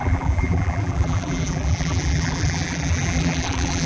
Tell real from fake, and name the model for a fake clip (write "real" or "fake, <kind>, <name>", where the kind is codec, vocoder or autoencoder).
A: fake, vocoder, BigVGAN v2